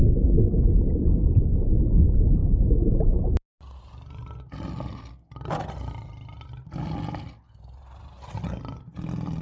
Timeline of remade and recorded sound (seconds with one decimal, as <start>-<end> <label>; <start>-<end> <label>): 0.0-0.5 remade; 0.5-9.4 recorded